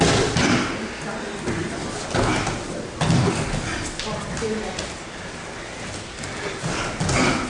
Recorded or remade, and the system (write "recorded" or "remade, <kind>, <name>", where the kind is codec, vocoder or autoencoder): recorded